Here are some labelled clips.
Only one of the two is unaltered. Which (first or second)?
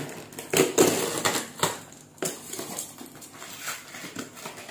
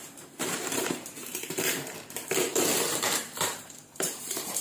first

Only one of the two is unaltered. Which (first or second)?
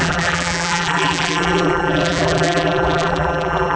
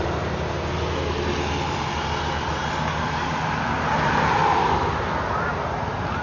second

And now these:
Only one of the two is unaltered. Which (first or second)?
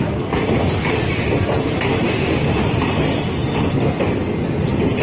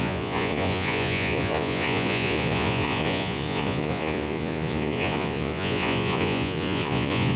first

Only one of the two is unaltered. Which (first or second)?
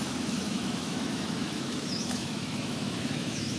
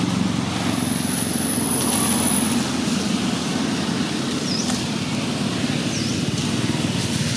second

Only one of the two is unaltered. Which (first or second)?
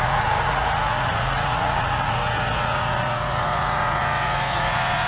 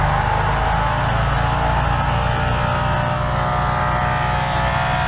second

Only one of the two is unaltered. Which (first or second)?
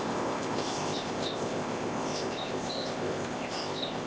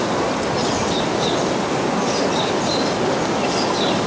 second